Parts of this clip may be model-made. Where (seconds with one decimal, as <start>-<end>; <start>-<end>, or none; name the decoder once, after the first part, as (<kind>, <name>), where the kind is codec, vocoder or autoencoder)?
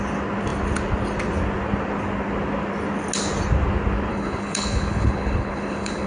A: 4.1-6.1 (codec, HILCodec)